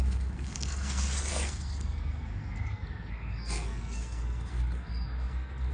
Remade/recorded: remade